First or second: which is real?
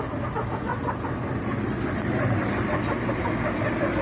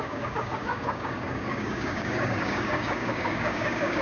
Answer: first